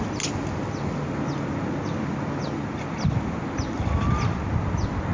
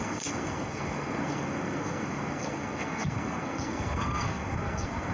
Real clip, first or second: first